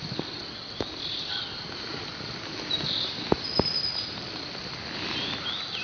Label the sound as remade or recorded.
recorded